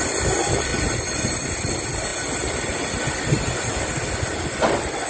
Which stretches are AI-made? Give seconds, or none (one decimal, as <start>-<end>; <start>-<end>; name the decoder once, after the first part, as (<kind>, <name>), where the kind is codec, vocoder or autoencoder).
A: none